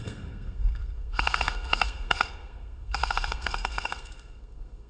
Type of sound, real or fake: fake